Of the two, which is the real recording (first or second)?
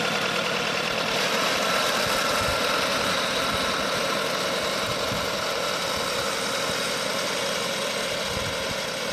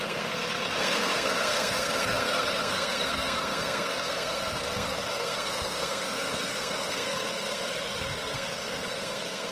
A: first